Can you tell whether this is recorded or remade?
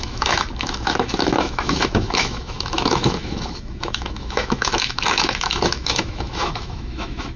remade